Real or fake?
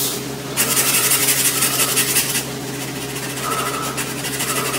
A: real